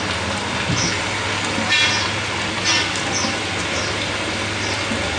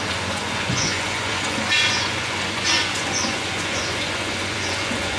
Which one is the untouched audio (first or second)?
first